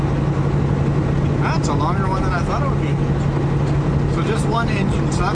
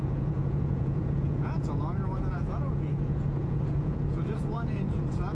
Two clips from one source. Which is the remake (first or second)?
second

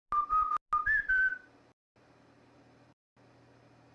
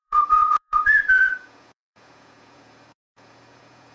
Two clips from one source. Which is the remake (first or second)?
second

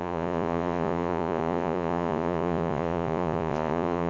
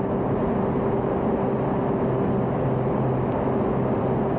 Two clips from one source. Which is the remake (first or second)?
first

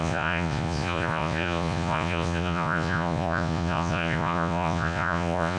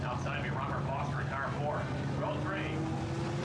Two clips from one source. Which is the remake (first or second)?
first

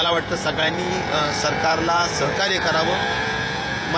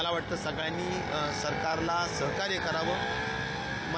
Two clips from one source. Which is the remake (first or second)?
first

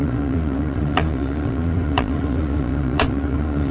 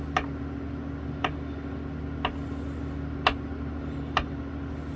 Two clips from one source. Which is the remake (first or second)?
first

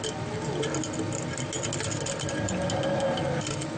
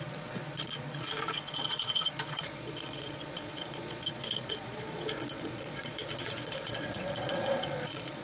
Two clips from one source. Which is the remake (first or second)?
second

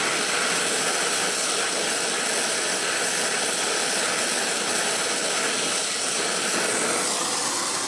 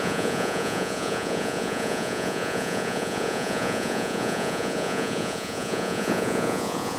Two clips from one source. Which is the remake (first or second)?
second